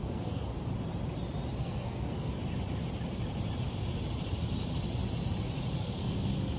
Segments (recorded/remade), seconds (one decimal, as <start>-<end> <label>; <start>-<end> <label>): 0.0-0.5 remade; 0.5-1.6 recorded; 1.6-2.3 remade; 2.3-5.7 recorded; 5.7-6.6 remade

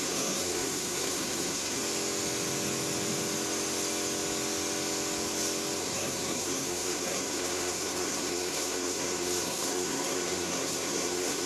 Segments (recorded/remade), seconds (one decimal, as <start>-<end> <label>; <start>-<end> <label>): 0.0-1.8 remade; 1.8-5.8 recorded; 5.8-11.5 remade